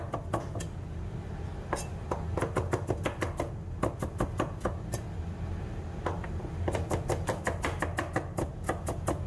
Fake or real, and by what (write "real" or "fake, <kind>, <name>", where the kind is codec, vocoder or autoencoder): real